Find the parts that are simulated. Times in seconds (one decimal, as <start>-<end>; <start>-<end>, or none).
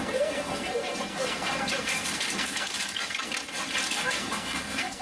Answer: 0.0-3.3; 3.9-5.0